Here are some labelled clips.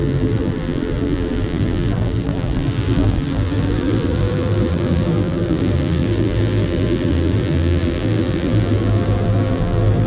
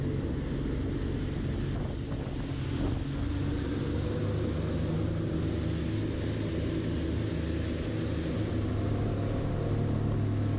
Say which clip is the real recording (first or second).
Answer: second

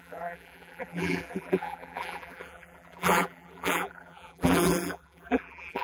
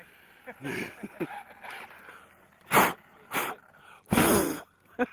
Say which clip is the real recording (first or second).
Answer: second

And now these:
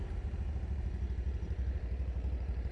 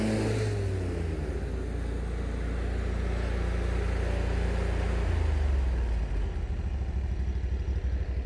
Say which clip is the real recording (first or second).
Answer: second